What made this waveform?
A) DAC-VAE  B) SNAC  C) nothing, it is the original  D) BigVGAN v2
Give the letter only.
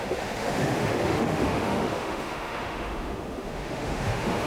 A